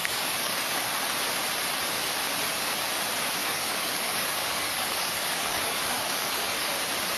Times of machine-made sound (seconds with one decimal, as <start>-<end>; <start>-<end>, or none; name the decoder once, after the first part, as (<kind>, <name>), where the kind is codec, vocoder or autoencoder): 0.0-0.8 (codec, DAC); 3.4-6.7